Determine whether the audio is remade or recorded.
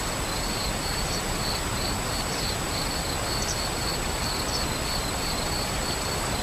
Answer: recorded